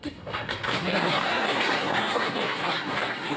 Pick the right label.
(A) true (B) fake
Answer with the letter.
B